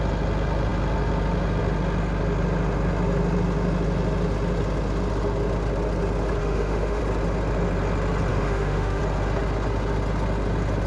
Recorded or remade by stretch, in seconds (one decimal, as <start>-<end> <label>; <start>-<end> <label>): 0.0-6.4 recorded; 6.4-7.0 remade; 7.0-8.3 recorded; 8.3-9.0 remade; 9.0-10.9 recorded